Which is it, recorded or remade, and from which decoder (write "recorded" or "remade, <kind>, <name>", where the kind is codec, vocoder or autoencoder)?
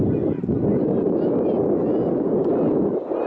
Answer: recorded